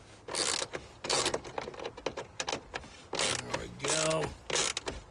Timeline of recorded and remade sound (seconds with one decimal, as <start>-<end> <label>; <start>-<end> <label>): 0.0-5.1 recorded